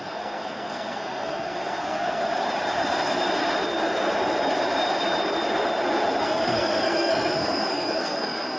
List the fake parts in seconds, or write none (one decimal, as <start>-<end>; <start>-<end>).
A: 0.0-2.2; 6.2-8.6